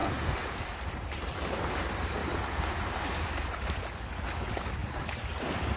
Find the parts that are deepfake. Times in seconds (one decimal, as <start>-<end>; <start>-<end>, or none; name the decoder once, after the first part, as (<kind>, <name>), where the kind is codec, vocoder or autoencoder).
0.0-1.1 (vocoder, BigVGAN v2); 2.2-3.8; 4.8-5.8